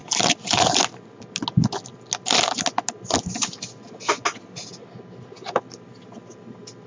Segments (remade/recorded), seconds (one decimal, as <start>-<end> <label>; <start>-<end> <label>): 0.0-6.9 recorded